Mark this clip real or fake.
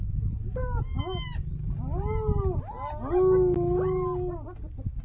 real